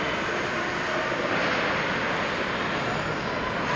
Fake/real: real